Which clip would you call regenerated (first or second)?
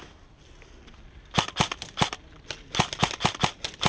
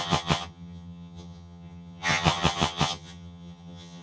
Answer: second